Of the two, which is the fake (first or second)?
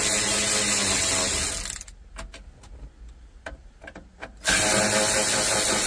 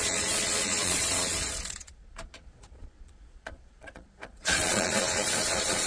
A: second